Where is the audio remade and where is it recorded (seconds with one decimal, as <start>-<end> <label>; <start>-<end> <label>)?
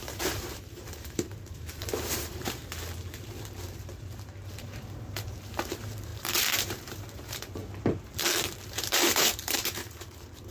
0.0-2.6 remade; 2.6-3.8 recorded; 3.8-7.6 remade; 7.6-8.7 recorded; 8.7-10.5 remade